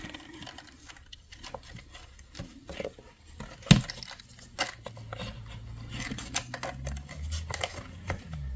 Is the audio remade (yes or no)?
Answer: no